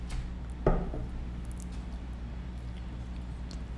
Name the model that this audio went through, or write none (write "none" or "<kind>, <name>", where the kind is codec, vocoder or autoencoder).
none